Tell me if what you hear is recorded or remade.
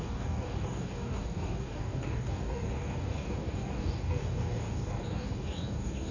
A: remade